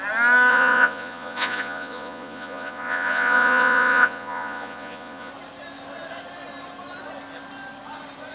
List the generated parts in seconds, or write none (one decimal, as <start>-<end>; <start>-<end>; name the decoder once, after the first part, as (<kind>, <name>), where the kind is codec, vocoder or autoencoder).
0.5-5.3 (vocoder, Vocos)

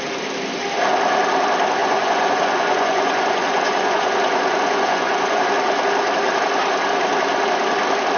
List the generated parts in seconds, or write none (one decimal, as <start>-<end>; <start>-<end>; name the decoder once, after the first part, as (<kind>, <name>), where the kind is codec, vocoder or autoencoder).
1.8-5.5 (vocoder, Vocos)